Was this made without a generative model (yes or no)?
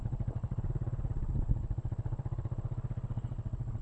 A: no